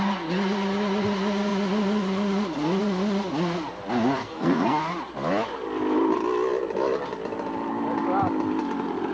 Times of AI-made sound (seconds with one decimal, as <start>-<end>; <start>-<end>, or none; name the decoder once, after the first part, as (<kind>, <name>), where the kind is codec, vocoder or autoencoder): 4.2-4.8 (codec, SNAC)